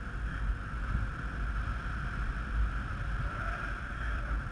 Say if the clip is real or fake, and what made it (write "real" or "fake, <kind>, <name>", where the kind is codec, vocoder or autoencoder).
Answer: real